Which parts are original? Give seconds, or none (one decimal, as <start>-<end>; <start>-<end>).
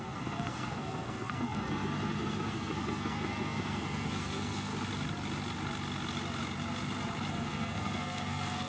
4.7-7.3